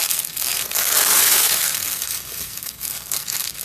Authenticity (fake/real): fake